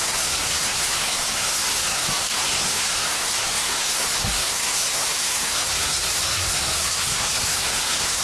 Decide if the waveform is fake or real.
fake